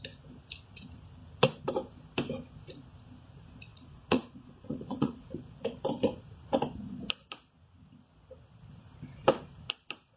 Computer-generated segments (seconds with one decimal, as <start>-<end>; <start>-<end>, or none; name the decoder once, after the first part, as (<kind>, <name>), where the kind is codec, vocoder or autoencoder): 3.7-5.3 (vocoder, Vocos)